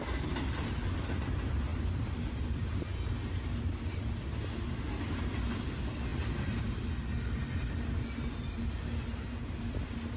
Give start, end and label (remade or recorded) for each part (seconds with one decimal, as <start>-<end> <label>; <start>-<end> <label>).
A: 0.0-10.2 recorded